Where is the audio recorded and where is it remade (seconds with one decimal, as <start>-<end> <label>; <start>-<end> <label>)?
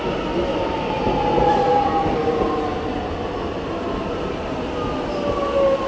0.0-5.9 recorded